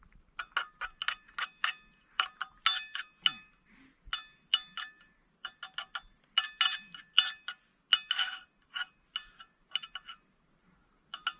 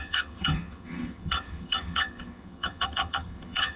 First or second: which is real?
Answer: first